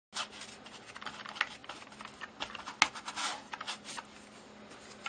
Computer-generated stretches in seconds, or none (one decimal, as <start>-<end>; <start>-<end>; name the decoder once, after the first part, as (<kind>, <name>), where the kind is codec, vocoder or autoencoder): none